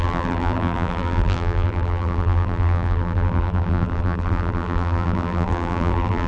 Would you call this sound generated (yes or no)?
yes